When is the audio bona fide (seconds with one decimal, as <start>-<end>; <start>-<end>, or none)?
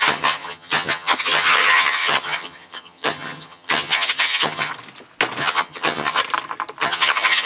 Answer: 4.7-5.4; 6.2-6.8